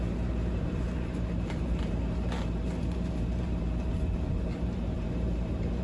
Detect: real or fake fake